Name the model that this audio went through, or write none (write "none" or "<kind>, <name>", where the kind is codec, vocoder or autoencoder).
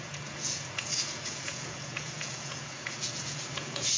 vocoder, Vocos